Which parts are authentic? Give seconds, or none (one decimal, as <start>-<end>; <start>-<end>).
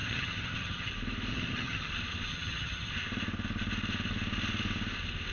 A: 0.9-1.3; 1.9-2.3; 2.9-5.3